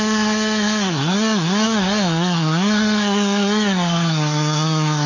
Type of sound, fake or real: fake